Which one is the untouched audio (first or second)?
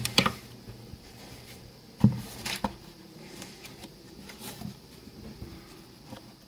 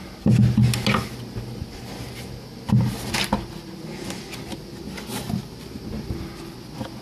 second